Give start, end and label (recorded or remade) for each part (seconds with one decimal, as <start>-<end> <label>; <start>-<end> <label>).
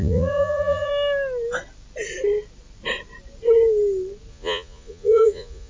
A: 0.0-0.9 remade; 0.9-4.3 recorded; 4.3-5.7 remade